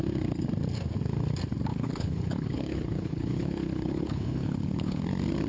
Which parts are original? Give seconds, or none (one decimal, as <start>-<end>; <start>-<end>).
0.0-1.7; 5.0-5.5